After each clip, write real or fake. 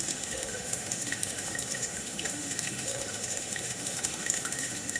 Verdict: fake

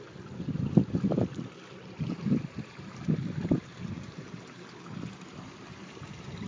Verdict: real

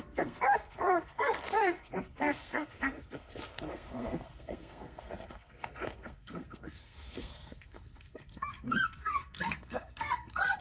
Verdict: fake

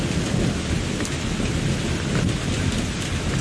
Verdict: real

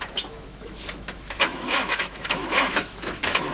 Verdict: fake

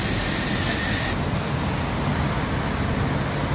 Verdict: real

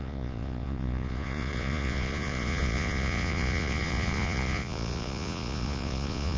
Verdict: fake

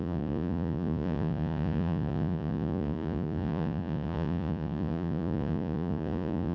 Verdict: fake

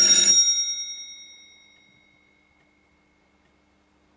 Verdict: real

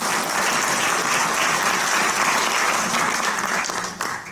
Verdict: real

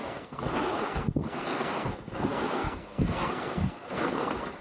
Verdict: fake